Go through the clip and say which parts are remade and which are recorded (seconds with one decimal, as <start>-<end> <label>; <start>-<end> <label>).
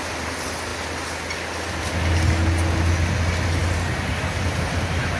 0.0-5.2 recorded